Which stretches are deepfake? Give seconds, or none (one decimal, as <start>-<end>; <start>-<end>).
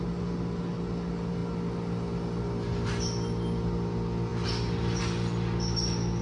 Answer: none